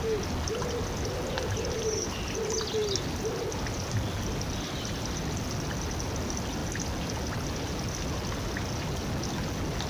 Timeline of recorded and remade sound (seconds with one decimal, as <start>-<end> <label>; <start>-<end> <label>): 0.0-9.9 recorded